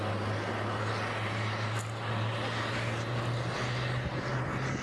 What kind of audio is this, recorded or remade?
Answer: recorded